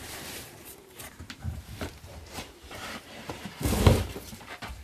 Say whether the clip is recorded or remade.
remade